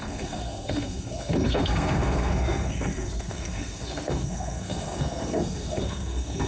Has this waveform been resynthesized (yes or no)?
yes